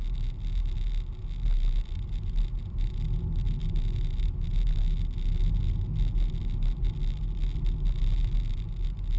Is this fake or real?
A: real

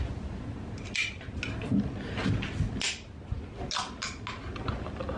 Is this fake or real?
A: real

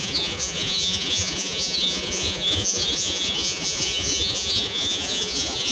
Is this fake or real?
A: fake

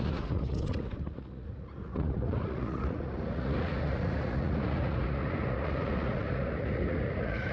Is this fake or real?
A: fake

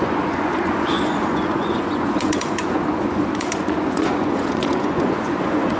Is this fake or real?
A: fake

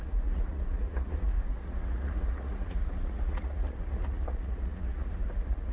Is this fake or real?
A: fake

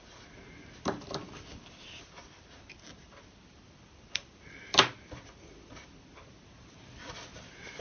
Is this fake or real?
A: real